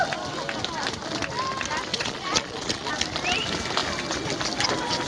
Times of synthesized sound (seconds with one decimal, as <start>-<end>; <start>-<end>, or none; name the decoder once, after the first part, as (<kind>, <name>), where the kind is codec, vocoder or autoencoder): 1.9-2.9 (vocoder, Vocos)